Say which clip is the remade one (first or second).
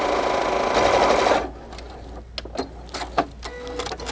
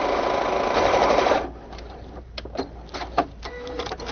second